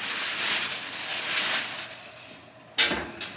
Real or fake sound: real